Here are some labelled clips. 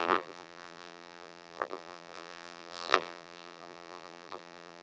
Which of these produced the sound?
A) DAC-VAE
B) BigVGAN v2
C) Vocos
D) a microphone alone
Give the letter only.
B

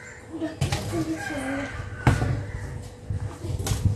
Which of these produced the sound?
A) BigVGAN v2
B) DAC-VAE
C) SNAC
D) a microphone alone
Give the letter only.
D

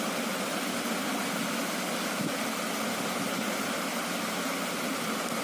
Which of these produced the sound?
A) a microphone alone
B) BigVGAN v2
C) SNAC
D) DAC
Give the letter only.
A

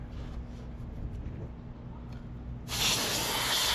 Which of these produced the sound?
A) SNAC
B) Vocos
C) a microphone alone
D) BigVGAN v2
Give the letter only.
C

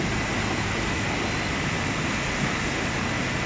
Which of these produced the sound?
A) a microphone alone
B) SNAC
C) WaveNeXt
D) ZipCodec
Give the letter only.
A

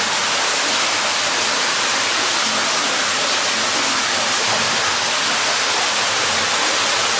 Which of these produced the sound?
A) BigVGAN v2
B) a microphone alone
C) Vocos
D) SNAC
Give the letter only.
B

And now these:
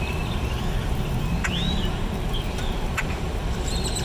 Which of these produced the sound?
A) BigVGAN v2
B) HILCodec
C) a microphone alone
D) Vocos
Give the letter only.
A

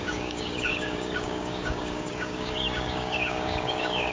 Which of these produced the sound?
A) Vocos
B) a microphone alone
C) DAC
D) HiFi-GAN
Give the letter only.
C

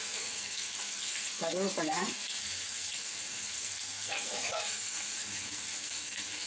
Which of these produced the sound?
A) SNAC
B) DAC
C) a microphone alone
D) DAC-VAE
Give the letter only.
A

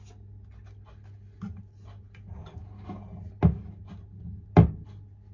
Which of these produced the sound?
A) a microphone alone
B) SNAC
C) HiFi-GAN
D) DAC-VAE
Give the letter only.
A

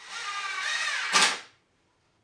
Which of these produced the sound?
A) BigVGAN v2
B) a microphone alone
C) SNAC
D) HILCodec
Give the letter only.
B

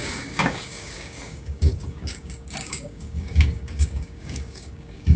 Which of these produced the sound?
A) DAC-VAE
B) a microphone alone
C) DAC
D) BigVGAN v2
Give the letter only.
C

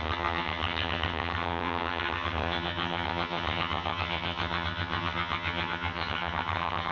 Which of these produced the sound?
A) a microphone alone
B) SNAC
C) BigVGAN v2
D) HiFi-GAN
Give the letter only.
D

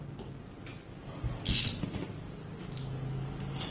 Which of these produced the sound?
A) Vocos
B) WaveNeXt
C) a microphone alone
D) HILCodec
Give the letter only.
C